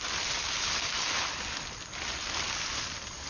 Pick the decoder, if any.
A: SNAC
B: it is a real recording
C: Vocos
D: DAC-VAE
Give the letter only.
B